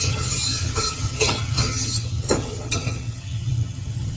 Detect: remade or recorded remade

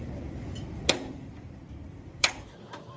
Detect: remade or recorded remade